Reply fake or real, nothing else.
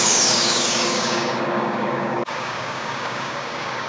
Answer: fake